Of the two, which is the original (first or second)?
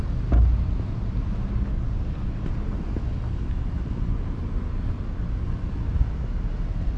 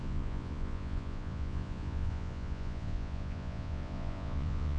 first